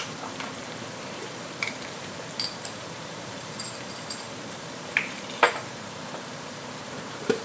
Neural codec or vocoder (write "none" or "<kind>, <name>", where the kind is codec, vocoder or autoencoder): vocoder, BigVGAN v2